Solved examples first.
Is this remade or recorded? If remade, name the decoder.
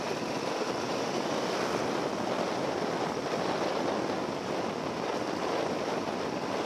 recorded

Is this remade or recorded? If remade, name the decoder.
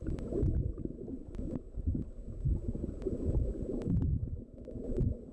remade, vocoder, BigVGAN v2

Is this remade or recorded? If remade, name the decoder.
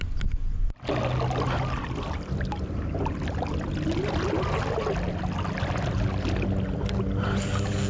recorded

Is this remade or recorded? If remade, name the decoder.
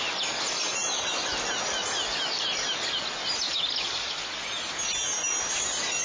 recorded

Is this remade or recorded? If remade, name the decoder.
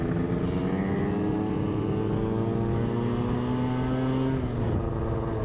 recorded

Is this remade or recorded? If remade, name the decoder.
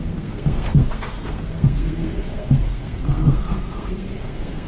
remade, codec, SNAC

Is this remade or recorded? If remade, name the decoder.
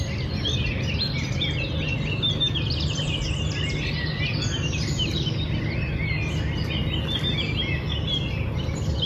recorded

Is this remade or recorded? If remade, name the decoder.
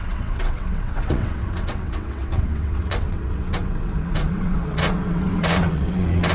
remade, vocoder, WaveNeXt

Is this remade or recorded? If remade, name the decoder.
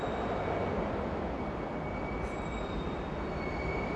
recorded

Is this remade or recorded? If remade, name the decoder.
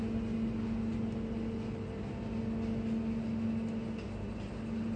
recorded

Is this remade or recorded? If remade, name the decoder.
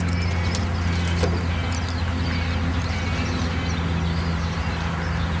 recorded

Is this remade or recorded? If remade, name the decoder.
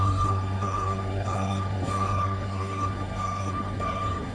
remade, codec, SNAC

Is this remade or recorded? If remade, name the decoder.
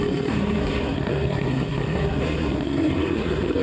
remade, codec, SNAC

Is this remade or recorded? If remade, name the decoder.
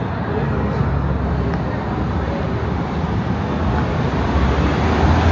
recorded